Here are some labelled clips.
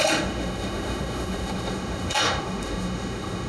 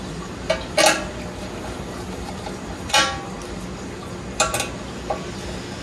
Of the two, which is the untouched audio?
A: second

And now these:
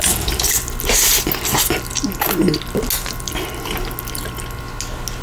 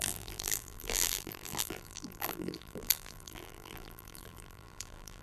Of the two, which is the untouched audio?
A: first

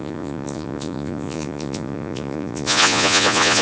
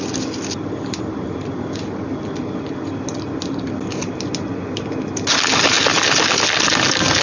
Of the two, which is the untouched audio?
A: second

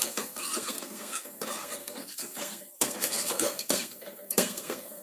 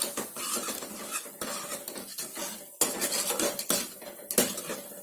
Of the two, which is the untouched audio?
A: second